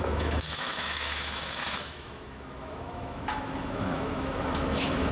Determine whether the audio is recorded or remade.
remade